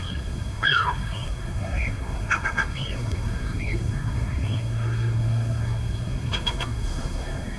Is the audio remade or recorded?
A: remade